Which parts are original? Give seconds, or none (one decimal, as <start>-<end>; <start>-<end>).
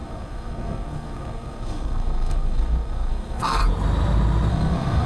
3.6-4.5